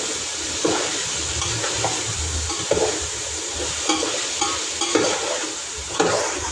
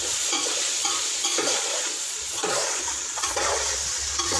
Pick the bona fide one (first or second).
first